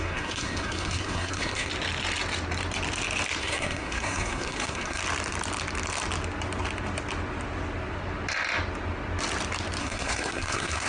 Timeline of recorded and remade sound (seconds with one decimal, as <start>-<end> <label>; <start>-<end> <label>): 0.0-1.7 remade; 1.7-3.4 recorded; 3.4-5.0 remade; 5.0-9.8 recorded; 9.8-10.9 remade